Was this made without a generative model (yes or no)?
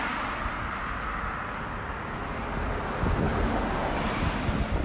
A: yes